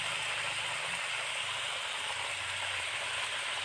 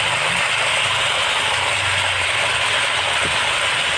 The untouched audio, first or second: second